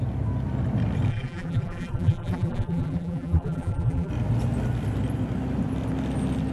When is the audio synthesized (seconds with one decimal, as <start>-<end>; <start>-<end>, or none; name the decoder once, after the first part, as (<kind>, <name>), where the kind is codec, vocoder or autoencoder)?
1.1-4.1 (vocoder, BigVGAN v2)

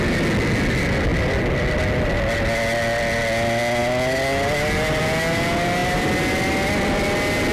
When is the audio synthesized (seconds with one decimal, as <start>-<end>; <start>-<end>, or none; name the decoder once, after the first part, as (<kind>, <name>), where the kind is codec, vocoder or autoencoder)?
5.8-7.0 (vocoder, BigVGAN v2)

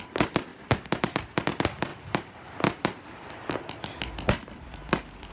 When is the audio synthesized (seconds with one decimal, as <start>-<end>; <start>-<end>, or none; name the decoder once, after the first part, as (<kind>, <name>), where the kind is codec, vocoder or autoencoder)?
0.5-1.5 (vocoder, BigVGAN v2); 1.9-3.3